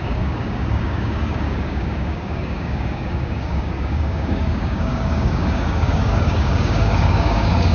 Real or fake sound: fake